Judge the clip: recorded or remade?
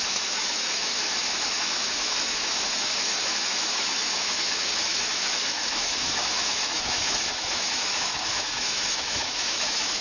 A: remade